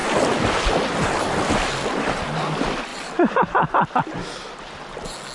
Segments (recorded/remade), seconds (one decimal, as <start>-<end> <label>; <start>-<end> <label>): 0.0-2.9 recorded; 2.9-4.0 remade; 4.0-5.3 recorded